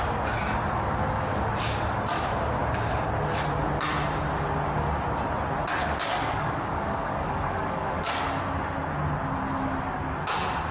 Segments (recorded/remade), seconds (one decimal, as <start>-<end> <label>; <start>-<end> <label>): 0.0-5.8 recorded; 5.8-8.4 remade; 8.4-10.7 recorded